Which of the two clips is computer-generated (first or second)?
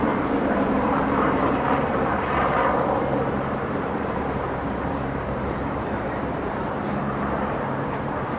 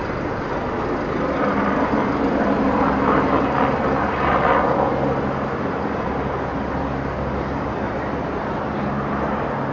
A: first